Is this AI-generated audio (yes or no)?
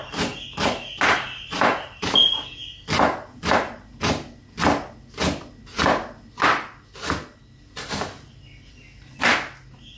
no